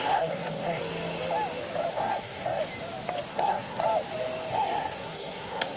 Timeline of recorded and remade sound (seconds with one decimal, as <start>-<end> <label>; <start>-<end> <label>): 0.0-0.8 remade; 0.8-1.9 recorded; 1.9-2.6 remade; 2.6-3.3 recorded; 3.3-3.8 remade; 3.8-4.5 recorded; 4.5-5.8 remade